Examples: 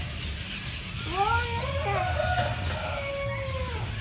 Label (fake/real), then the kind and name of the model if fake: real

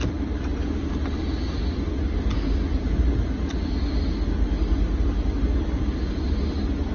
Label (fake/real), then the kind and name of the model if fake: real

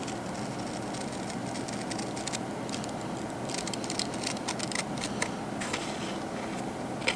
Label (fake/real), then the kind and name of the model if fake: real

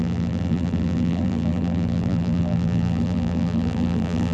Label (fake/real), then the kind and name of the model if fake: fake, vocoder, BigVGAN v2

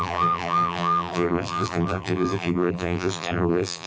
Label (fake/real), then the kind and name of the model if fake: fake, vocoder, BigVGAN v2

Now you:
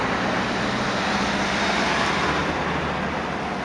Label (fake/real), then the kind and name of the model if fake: real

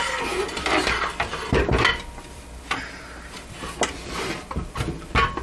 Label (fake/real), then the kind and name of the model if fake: real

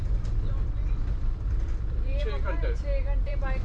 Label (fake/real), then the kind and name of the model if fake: fake, vocoder, BigVGAN v2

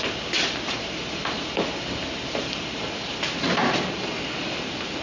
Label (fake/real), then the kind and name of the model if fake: fake, vocoder, BigVGAN v2